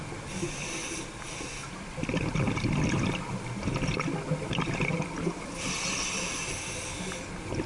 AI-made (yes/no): no